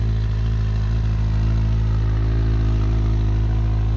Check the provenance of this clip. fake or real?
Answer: real